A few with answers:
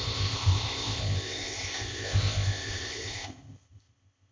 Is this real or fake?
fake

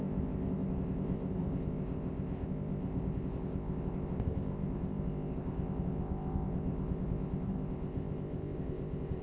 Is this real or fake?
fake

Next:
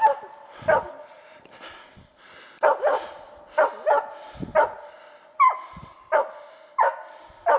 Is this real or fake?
real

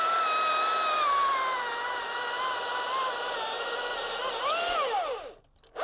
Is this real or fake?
real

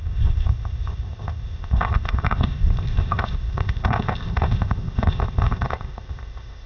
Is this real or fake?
fake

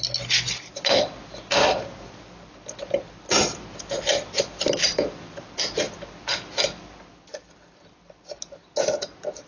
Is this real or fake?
real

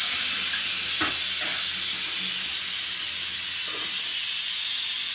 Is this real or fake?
real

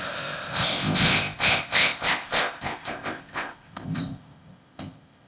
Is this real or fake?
fake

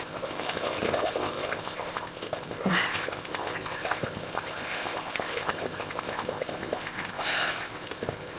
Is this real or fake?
fake